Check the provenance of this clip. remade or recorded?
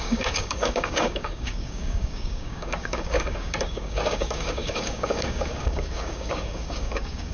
remade